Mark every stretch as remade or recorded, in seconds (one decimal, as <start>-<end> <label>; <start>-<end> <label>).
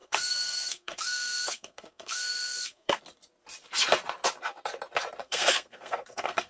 0.0-3.0 remade; 3.0-5.2 recorded; 5.2-6.5 remade